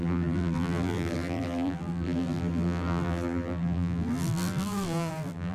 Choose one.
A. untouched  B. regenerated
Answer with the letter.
B